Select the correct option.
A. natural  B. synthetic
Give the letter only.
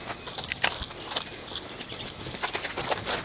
A